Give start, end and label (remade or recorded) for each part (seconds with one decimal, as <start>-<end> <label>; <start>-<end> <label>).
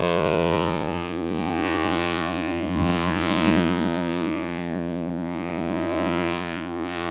0.0-7.1 remade